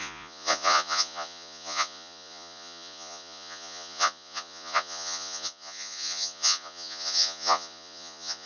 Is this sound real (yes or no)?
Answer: no